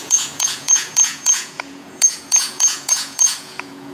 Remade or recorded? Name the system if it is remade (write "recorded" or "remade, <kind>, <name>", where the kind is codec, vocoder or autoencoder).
remade, vocoder, Vocos